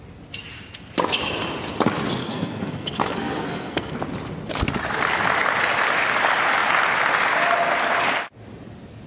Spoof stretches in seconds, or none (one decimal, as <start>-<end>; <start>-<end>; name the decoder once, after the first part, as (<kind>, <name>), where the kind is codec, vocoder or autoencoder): 2.2-4.0 (codec, SNAC)